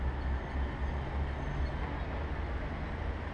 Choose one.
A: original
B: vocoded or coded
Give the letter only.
A